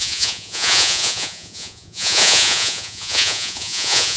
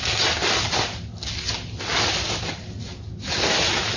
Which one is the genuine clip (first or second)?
second